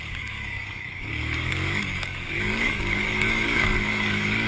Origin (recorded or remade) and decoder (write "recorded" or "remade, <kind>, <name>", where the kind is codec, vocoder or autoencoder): remade, codec, DAC